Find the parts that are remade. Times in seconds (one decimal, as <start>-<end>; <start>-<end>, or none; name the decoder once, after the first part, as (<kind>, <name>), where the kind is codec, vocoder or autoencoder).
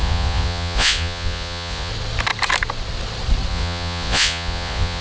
0.0-1.9 (vocoder, Vocos); 3.5-5.0